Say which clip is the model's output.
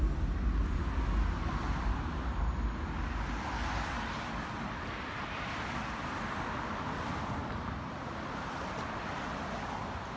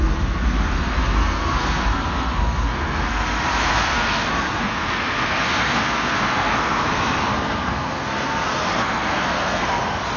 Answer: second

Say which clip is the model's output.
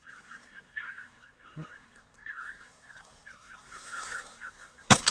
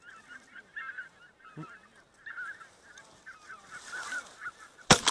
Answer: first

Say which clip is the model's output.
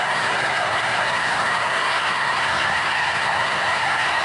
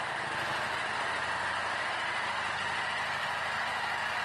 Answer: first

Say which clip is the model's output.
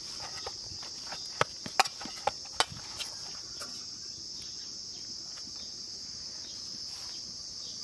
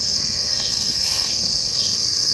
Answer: second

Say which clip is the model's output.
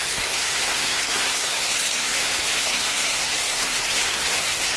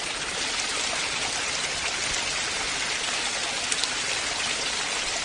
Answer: first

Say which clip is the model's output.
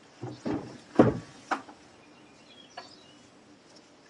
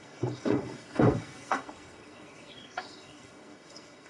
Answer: second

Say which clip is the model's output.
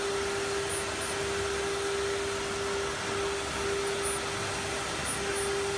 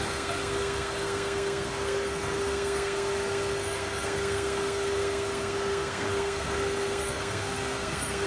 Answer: second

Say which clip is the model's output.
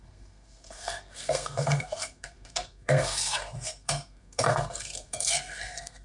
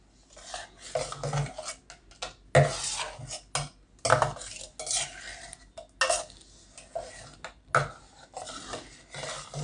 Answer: first